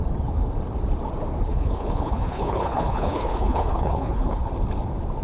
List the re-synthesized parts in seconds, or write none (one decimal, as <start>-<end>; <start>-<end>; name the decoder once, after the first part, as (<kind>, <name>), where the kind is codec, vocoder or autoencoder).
1.4-4.5 (codec, HILCodec)